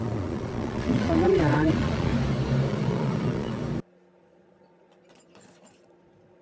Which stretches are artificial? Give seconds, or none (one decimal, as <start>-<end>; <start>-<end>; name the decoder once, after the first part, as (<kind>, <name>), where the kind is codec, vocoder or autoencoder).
0.0-2.1 (vocoder, Vocos); 2.7-3.6; 4.2-6.4